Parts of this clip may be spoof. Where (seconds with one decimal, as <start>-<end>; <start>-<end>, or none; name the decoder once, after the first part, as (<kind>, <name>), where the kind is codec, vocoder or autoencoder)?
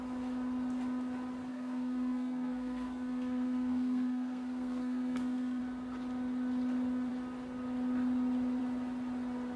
1.5-5.6 (codec, SNAC)